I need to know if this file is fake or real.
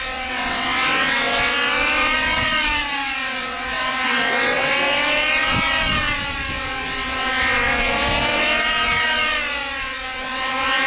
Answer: fake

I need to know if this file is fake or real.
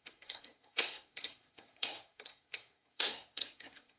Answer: fake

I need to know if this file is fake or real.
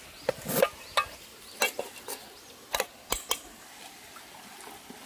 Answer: real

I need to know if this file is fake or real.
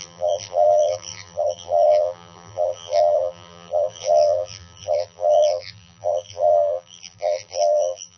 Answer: fake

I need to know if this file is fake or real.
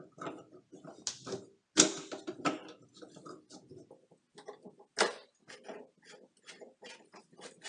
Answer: real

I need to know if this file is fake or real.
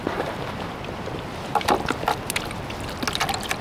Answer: real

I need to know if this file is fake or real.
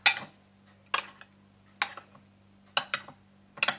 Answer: real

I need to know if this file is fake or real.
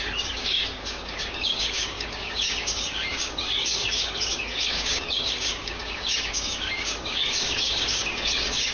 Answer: fake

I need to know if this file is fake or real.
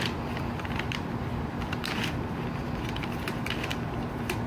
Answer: real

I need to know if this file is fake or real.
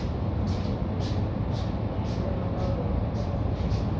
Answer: real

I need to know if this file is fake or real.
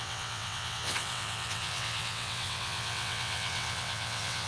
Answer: fake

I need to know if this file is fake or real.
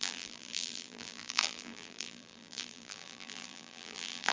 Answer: fake